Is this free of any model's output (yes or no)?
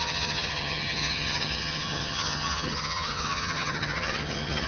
no